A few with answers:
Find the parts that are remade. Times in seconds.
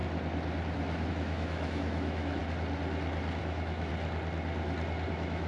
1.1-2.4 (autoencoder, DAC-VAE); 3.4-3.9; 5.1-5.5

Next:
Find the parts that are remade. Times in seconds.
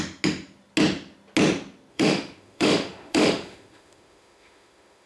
1.9-5.1 (autoencoder, DAC-VAE)